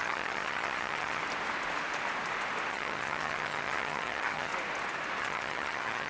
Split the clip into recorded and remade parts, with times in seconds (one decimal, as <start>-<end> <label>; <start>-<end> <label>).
0.0-1.2 remade; 1.2-2.7 recorded; 2.7-4.5 remade; 4.5-5.2 recorded; 5.2-6.1 remade